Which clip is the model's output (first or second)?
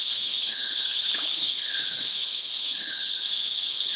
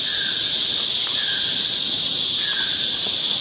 first